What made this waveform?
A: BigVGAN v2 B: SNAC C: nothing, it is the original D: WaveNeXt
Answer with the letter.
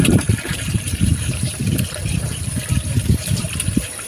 A